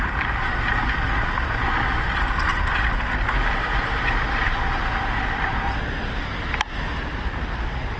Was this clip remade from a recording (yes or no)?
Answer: no